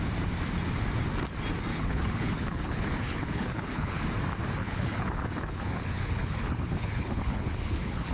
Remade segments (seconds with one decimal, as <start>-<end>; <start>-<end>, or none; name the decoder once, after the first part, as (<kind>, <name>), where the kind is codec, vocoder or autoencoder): 1.7-4.0 (codec, HILCodec); 4.6-8.1